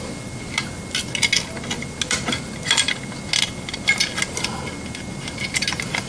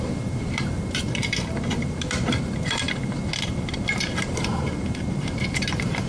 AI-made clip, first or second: second